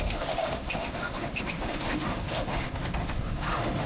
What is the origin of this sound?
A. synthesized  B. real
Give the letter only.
A